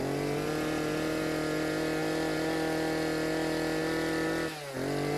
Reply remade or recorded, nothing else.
recorded